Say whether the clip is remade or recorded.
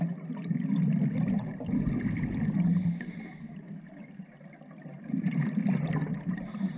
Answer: recorded